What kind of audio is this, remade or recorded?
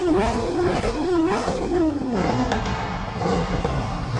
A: remade